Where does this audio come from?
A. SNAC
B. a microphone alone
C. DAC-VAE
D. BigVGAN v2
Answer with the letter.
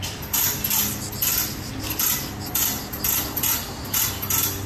B